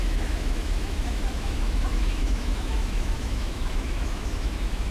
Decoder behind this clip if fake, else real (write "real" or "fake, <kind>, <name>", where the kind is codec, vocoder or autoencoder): fake, autoencoder, DAC-VAE